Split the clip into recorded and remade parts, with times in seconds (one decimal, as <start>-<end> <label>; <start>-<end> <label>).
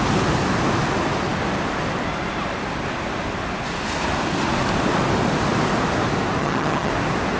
0.0-6.4 recorded; 6.4-6.9 remade; 6.9-7.4 recorded